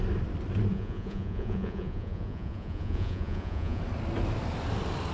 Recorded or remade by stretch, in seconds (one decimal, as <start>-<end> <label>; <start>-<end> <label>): 0.0-0.7 recorded; 0.7-3.8 remade; 3.8-5.1 recorded